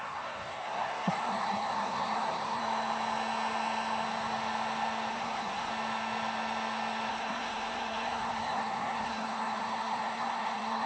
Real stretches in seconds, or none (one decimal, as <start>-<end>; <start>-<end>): 2.6-5.1; 5.7-7.1